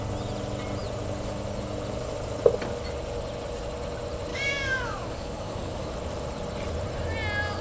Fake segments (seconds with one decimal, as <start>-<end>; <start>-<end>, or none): 4.3-5.9